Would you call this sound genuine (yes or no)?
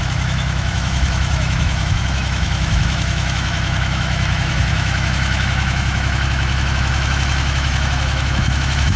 no